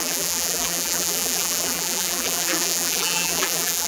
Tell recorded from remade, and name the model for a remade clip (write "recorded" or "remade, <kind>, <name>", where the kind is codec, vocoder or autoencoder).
remade, vocoder, BigVGAN v2